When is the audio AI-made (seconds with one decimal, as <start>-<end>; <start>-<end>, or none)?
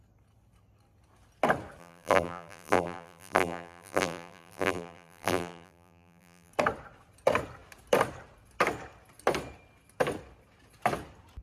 1.8-6.5